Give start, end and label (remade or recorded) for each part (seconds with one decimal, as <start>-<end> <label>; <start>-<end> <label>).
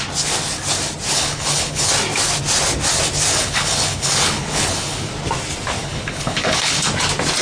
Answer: 0.0-1.1 recorded; 1.1-1.9 remade; 1.9-3.3 recorded; 3.3-5.1 remade; 5.1-5.8 recorded; 5.8-6.9 remade; 6.9-7.4 recorded